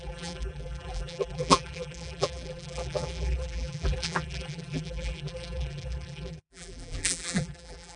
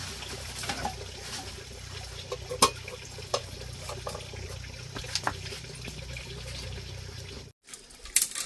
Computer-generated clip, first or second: first